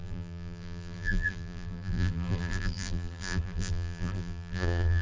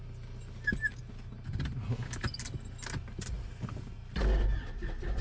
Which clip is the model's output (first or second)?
first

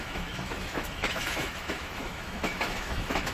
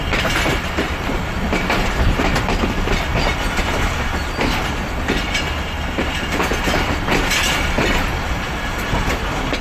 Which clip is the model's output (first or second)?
first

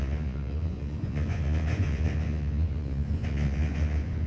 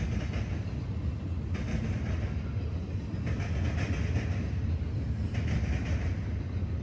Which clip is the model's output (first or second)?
first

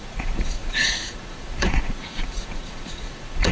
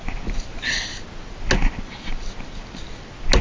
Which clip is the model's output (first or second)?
first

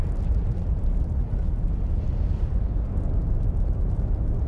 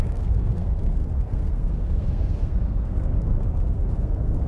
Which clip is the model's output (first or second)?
second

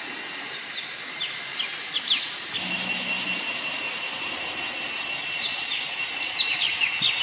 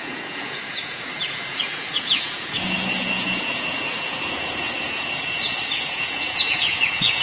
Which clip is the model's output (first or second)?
second